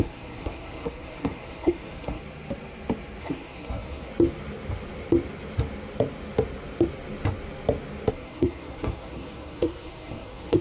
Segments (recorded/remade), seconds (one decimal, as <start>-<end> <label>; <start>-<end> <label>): 0.0-2.2 remade; 2.2-3.2 recorded; 3.2-4.1 remade; 4.1-8.1 recorded; 8.1-10.6 remade